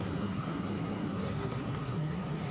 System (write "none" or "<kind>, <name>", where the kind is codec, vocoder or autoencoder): codec, SNAC